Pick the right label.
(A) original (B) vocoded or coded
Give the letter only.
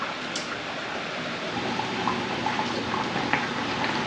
B